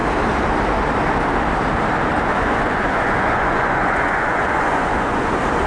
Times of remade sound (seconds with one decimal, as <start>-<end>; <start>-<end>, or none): 2.3-5.3